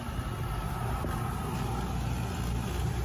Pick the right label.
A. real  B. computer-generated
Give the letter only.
A